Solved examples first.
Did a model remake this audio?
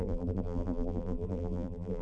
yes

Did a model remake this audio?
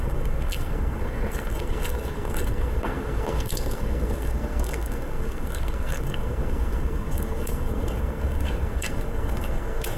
yes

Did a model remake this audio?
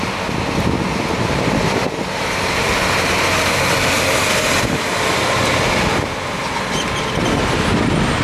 no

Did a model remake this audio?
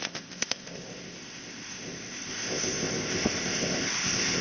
yes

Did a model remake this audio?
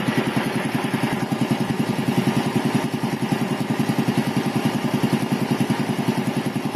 no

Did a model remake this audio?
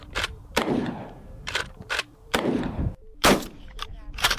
yes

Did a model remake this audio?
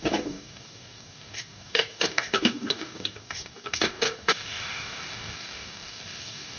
yes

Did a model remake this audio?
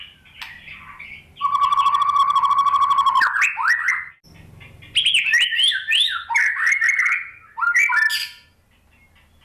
no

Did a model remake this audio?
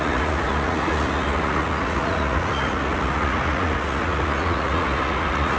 yes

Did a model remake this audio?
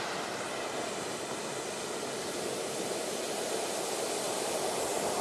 no